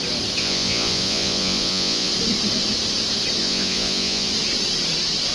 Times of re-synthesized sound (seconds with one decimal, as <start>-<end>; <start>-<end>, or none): 0.4-2.1; 3.4-4.3